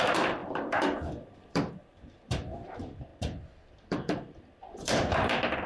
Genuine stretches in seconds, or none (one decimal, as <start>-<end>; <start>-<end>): 3.1-3.7